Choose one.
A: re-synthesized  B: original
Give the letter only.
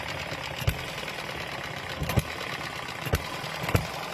B